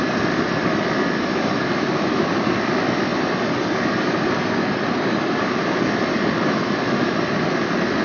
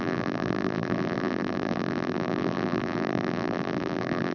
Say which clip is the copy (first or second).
second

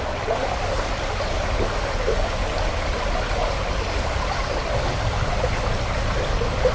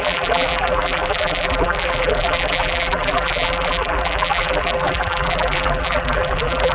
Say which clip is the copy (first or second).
second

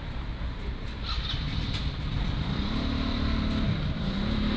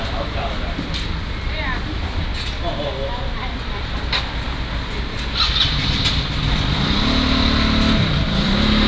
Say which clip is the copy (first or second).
first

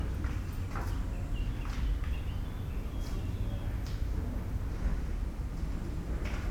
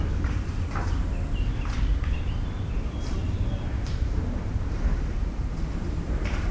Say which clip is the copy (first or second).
second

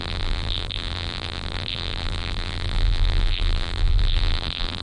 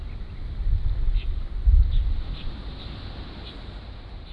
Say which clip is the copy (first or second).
first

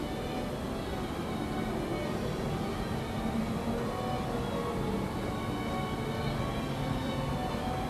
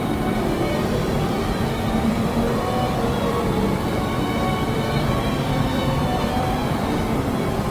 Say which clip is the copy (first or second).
second